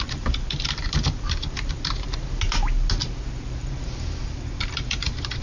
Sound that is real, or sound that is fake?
real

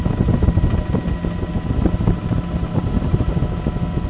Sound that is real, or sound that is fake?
real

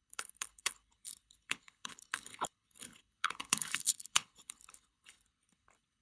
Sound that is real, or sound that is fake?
fake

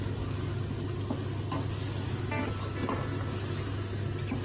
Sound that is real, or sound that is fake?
real